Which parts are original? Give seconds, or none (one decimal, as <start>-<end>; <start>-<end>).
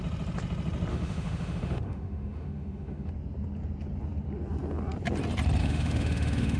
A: 0.0-0.9; 3.1-5.6